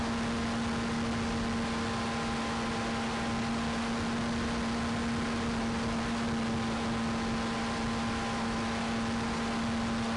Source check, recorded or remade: recorded